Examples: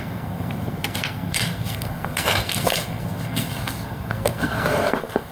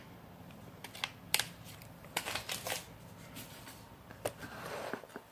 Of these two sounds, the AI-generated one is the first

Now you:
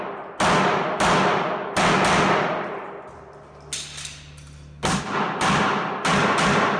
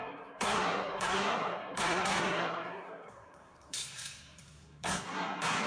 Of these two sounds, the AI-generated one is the second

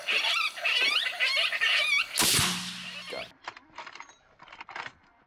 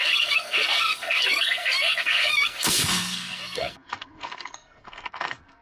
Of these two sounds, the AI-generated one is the second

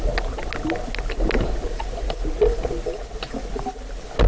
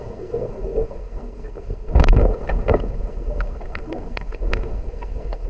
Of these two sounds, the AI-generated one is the second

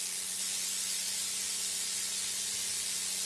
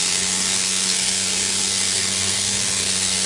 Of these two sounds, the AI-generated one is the second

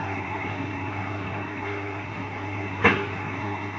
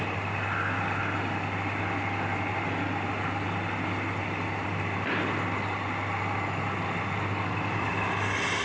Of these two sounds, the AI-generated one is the first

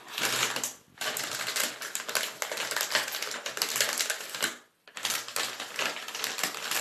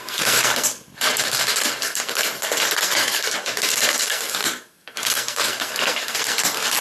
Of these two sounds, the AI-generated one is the second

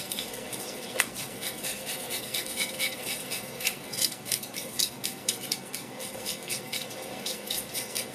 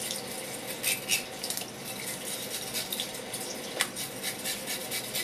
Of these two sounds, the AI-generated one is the first